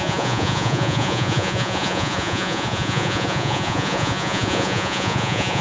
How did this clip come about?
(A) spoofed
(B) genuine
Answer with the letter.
A